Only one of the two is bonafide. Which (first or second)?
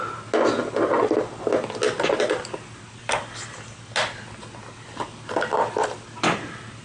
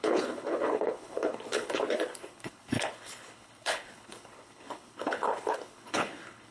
first